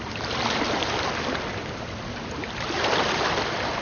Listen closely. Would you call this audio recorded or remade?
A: recorded